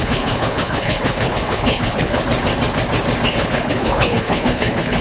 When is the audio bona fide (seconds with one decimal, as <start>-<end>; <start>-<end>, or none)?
2.2-3.3